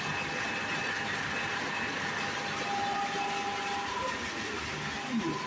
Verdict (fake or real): real